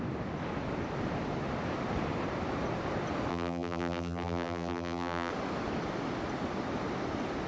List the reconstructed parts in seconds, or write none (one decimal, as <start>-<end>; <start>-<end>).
3.3-5.3